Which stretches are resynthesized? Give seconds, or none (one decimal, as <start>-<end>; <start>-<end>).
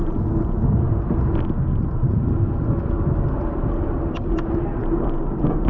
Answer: none